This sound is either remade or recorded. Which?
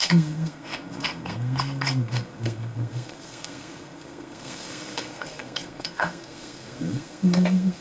remade